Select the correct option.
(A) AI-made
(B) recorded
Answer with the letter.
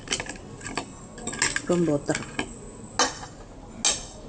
B